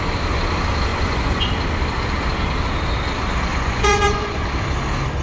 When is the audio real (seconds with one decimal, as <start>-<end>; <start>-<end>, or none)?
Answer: 0.0-0.9; 1.5-3.5; 4.4-5.2